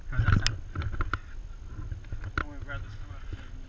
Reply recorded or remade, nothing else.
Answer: recorded